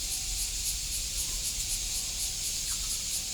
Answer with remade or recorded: remade